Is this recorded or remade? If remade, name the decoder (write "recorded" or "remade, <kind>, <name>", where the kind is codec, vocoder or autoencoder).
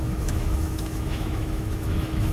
remade, autoencoder, DAC-VAE